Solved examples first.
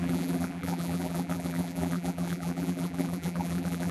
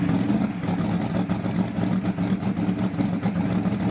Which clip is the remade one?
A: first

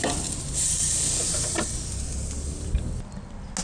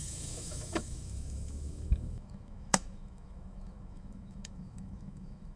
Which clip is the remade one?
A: second